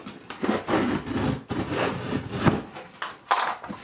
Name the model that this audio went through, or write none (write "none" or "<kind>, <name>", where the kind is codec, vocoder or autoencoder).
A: none